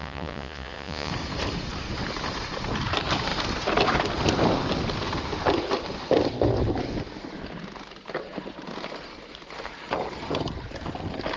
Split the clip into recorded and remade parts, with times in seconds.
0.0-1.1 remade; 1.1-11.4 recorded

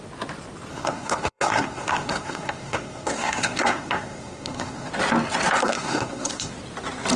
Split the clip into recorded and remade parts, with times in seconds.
0.0-0.7 recorded; 0.7-4.9 remade; 4.9-5.6 recorded; 5.6-6.5 remade; 6.5-7.2 recorded

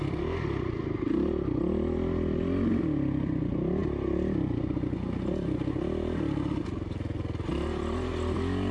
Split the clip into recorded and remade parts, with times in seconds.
0.0-8.7 recorded

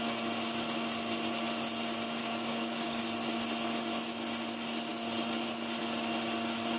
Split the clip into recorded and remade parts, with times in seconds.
0.0-2.2 recorded; 2.2-3.0 remade; 3.0-6.8 recorded